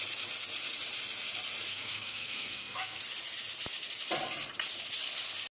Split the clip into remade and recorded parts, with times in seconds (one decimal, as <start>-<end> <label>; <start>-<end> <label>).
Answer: 0.0-1.7 recorded; 1.7-3.0 remade; 3.0-5.6 recorded

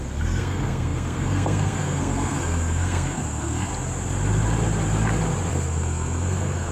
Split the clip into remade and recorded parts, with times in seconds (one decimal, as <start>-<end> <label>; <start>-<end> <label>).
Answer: 0.0-3.7 remade; 3.7-5.5 recorded; 5.5-6.7 remade

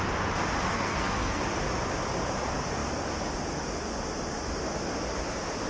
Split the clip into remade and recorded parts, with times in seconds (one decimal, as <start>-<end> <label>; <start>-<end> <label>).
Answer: 0.0-0.7 recorded; 0.7-1.4 remade; 1.4-5.7 recorded

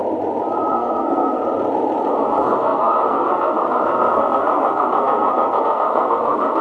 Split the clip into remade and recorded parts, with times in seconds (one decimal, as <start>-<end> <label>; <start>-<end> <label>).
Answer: 0.0-0.7 recorded; 0.7-1.4 remade; 1.4-2.1 recorded; 2.1-6.6 remade

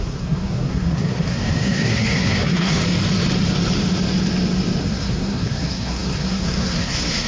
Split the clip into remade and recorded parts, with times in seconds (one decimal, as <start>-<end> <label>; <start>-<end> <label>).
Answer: 0.0-2.8 remade; 2.8-4.8 recorded; 4.8-7.3 remade

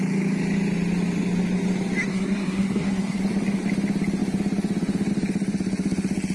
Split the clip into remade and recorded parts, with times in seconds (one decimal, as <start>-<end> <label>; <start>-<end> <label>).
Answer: 0.0-2.1 recorded; 2.1-3.2 remade; 3.2-6.3 recorded

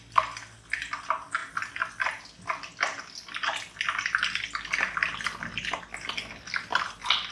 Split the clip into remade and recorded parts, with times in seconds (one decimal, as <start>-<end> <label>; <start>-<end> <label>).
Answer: 0.0-7.3 recorded